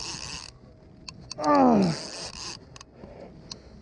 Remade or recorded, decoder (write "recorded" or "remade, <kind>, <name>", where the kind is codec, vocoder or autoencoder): recorded